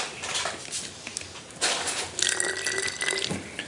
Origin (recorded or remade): recorded